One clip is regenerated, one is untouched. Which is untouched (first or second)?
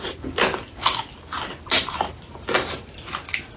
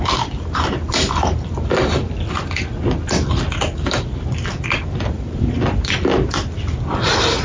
first